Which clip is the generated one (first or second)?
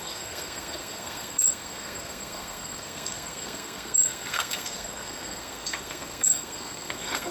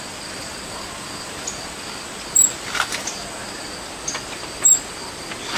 first